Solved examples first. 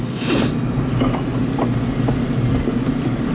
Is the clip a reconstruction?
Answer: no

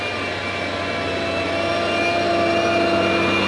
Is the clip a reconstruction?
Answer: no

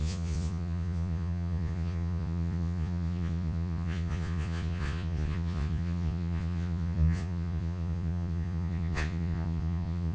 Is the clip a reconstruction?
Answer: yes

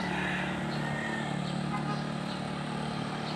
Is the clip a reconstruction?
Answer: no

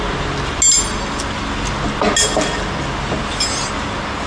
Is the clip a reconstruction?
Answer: no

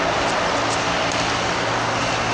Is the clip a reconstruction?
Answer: no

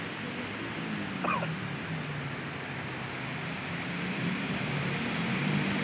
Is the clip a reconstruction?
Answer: no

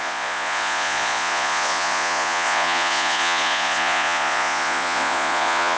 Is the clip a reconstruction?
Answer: yes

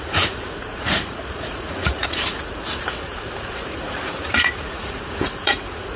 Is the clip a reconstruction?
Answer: yes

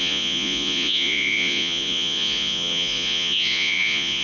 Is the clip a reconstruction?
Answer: yes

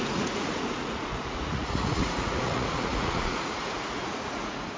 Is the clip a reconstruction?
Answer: yes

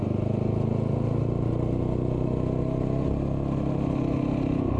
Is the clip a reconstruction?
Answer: no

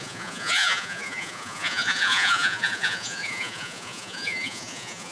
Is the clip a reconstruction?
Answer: yes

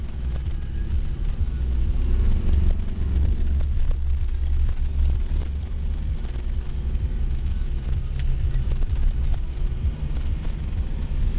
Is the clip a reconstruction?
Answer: no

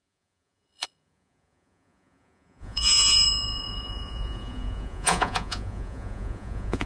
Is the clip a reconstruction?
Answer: yes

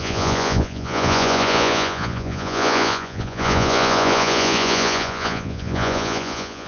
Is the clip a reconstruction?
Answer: yes